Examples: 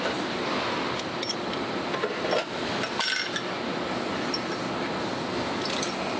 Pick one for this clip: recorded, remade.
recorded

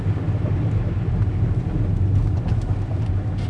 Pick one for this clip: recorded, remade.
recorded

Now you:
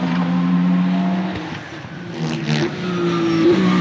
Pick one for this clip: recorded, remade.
recorded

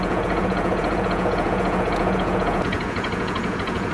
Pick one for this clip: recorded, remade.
remade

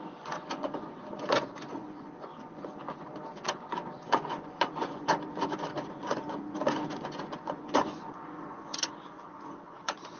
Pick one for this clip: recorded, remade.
remade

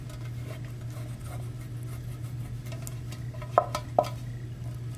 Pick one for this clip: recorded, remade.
recorded